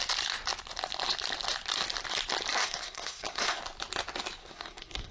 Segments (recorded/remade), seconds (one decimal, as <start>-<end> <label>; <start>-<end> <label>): 0.0-2.6 recorded; 2.6-3.6 remade; 3.6-4.4 recorded; 4.4-5.1 remade